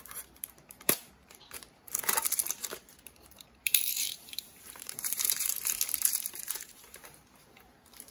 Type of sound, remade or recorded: remade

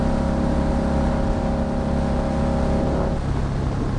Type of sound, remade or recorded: recorded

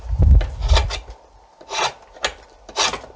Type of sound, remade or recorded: recorded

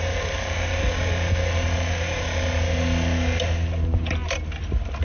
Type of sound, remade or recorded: recorded